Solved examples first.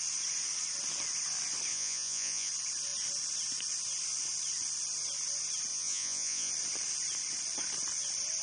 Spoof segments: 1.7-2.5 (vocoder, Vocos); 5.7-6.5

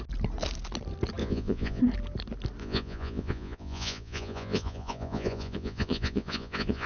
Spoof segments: 1.2-1.8 (vocoder, Vocos); 2.6-6.9

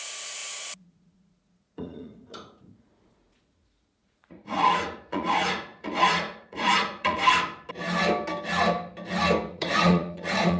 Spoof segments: 0.0-7.2 (vocoder, Vocos); 9.5-10.6

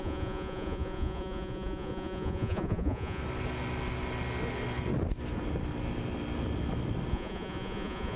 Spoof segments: 0.0-3.2 (vocoder, Vocos); 7.1-8.2

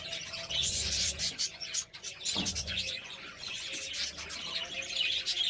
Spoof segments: 0.6-3.9 (vocoder, Vocos)

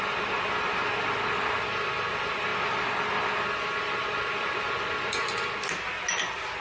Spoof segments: none

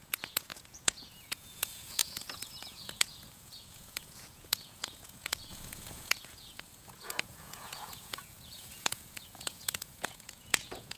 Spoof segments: 0.0-11.0 (vocoder, Vocos)